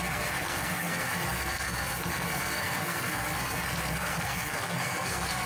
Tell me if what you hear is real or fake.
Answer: fake